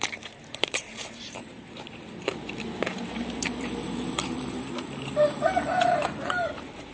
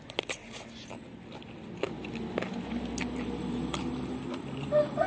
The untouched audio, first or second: second